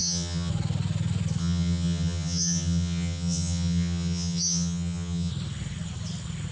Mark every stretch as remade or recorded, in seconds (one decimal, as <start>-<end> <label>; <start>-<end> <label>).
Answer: 0.0-0.5 remade; 0.5-1.4 recorded; 1.4-5.3 remade; 5.3-6.5 recorded